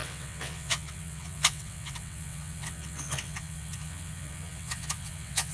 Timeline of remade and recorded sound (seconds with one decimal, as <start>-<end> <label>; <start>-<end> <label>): 0.0-5.5 remade